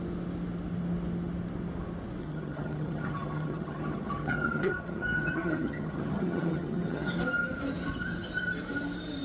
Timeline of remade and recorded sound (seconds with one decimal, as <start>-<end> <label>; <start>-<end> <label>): 0.0-2.2 recorded; 2.2-7.1 remade; 7.1-9.2 recorded